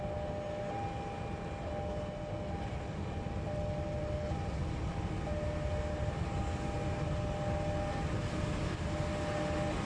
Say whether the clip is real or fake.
real